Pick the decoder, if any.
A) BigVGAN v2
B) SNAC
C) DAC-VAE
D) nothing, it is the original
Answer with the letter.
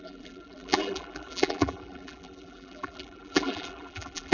A